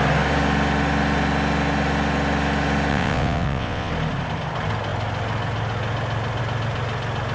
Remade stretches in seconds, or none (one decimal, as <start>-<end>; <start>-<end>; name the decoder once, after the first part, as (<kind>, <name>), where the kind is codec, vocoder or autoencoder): 2.9-3.9 (vocoder, WaveNeXt)